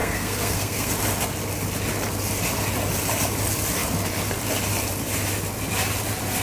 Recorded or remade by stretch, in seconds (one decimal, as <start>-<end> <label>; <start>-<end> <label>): 0.0-0.9 remade; 0.9-6.4 recorded